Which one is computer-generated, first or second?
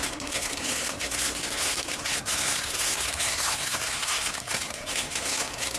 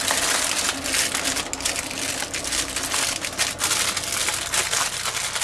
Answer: first